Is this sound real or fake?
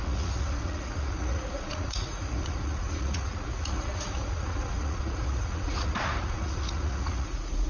fake